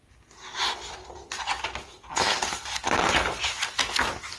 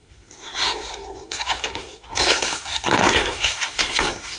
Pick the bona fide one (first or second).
first